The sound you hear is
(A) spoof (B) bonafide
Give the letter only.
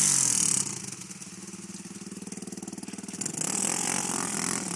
B